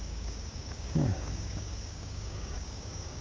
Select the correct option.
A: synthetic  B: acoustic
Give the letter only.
A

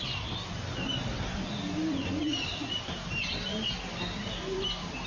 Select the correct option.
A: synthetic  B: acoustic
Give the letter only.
B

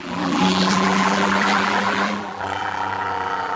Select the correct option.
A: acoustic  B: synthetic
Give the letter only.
B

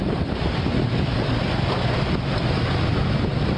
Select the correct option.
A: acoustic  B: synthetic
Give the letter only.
A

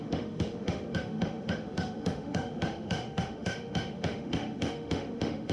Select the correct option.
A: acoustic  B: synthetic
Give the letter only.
B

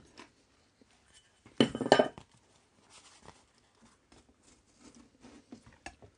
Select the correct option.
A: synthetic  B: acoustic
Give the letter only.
B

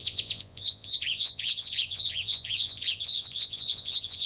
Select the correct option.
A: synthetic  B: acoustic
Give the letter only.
A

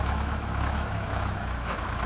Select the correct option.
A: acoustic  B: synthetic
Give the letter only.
B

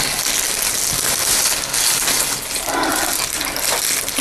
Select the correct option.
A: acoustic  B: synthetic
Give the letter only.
A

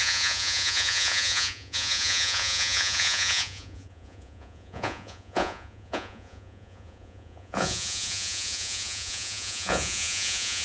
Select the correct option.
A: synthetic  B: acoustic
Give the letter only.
A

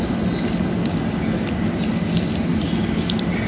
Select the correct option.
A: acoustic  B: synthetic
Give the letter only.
A